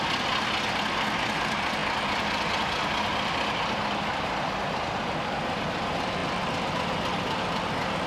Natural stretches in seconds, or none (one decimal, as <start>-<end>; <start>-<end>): 0.0-8.1